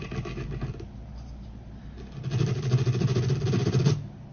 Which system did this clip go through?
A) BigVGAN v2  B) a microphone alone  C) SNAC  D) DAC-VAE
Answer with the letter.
B